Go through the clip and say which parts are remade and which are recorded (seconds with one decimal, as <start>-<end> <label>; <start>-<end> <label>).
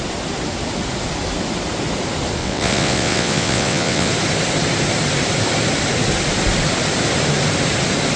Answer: 0.0-2.4 recorded; 2.4-4.1 remade; 4.1-8.2 recorded